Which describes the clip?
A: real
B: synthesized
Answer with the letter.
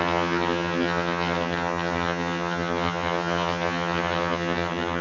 B